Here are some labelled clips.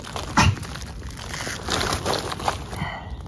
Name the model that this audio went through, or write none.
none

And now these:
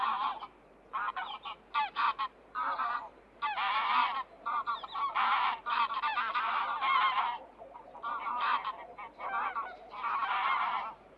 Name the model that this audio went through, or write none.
vocoder, BigVGAN v2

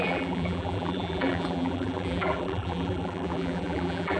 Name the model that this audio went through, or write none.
vocoder, BigVGAN v2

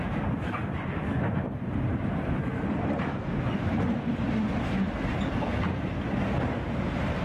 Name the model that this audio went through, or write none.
none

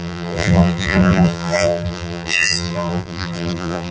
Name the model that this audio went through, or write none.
vocoder, BigVGAN v2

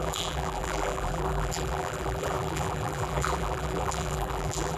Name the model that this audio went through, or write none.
vocoder, BigVGAN v2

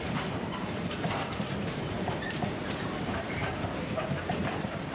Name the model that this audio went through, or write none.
vocoder, BigVGAN v2